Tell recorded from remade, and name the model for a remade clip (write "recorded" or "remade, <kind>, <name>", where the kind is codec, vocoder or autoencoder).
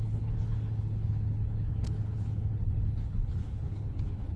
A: remade, codec, HILCodec